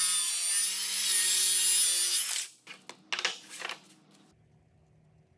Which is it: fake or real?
real